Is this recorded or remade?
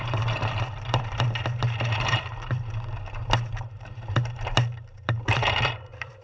remade